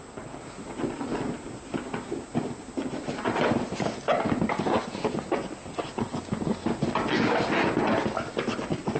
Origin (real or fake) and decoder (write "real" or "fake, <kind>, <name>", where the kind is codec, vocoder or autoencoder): real